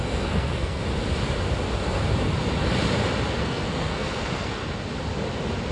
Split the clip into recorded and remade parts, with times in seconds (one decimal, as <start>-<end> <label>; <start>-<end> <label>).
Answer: 0.0-0.8 remade; 0.8-3.4 recorded; 3.4-4.6 remade; 4.6-5.7 recorded

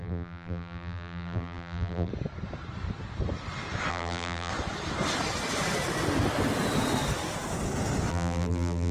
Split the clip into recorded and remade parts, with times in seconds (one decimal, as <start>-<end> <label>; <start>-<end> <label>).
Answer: 0.0-2.1 remade; 2.1-3.9 recorded; 3.9-4.5 remade; 4.5-8.1 recorded; 8.1-8.9 remade

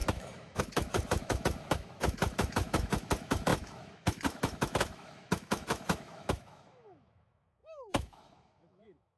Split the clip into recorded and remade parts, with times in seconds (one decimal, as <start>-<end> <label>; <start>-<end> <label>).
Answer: 0.0-9.2 remade